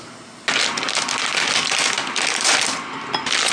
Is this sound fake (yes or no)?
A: no